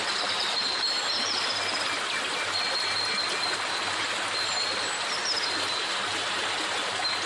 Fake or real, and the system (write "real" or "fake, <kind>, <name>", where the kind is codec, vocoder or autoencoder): real